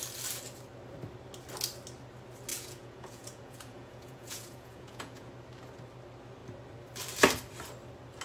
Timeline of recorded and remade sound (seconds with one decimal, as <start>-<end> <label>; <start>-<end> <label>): 0.0-2.5 recorded; 2.5-5.3 remade; 5.3-8.2 recorded